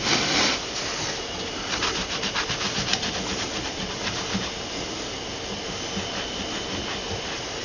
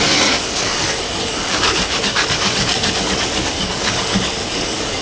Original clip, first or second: first